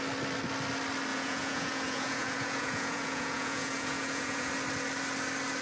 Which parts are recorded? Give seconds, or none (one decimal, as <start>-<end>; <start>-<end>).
0.0-1.1; 4.5-5.6